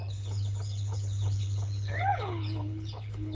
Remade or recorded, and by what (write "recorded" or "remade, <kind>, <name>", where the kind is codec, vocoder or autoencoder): remade, codec, HILCodec